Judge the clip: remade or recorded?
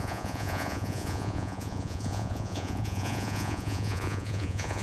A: remade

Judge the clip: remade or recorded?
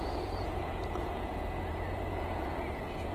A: remade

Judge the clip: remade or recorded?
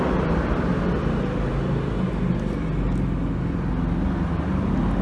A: recorded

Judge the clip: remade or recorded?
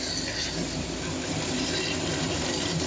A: recorded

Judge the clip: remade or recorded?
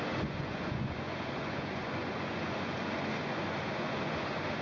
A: remade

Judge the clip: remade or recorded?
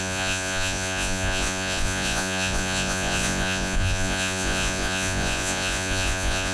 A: remade